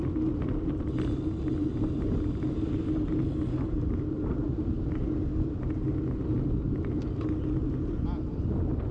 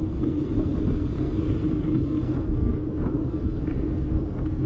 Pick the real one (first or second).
first